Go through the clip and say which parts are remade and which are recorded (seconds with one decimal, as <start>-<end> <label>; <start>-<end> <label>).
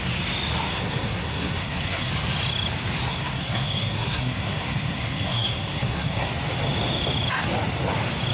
0.0-0.7 recorded; 0.7-2.1 remade; 2.1-3.1 recorded; 3.1-6.3 remade; 6.3-8.3 recorded